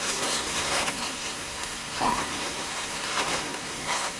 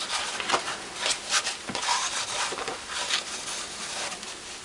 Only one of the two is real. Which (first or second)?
second